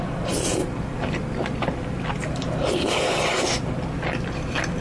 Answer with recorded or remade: recorded